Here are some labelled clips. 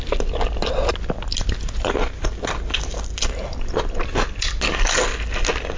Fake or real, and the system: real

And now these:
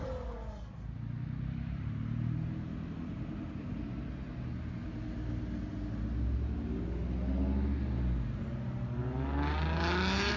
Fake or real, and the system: real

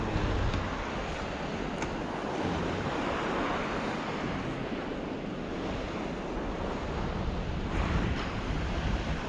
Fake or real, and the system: real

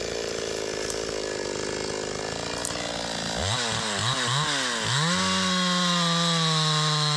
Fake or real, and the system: real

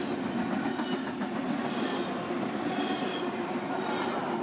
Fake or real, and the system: real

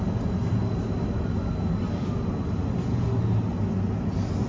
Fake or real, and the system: real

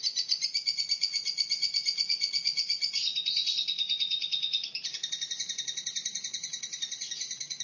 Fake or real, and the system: fake, vocoder, Vocos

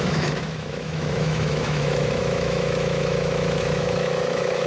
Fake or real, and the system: fake, autoencoder, DAC-VAE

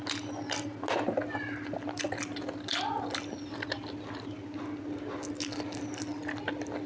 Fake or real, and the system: real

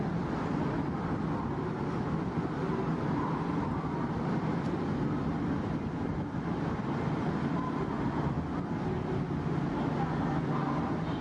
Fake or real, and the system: real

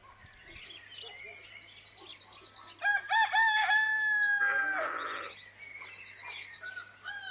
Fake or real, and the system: real